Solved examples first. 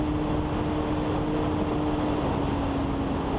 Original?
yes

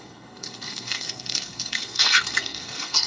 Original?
no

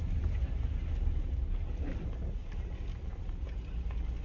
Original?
yes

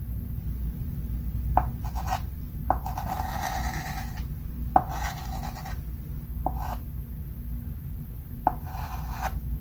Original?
yes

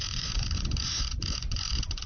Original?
no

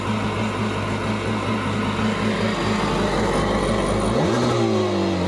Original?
yes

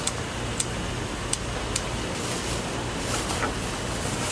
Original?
yes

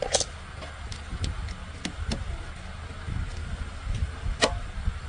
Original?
yes